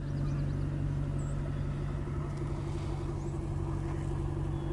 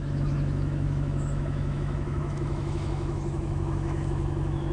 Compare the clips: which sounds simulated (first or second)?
second